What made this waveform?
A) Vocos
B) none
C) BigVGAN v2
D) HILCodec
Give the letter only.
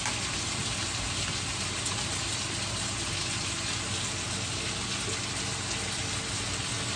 B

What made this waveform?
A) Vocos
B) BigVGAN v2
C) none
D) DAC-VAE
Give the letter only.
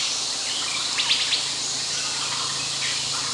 C